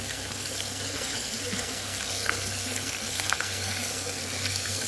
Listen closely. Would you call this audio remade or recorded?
remade